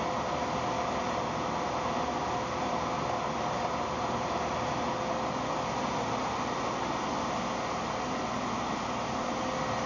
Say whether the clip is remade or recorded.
recorded